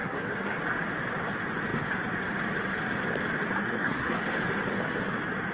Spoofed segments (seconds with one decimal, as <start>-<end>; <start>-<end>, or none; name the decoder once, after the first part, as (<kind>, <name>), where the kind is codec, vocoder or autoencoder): 0.0-0.6 (codec, SNAC); 3.6-4.2